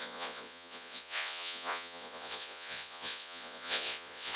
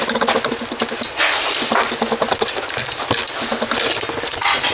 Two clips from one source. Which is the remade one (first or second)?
first